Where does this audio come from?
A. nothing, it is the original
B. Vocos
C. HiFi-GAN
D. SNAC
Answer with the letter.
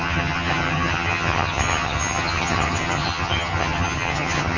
C